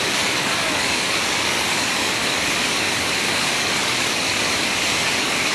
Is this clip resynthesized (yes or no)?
yes